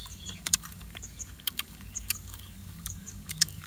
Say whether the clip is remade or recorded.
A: remade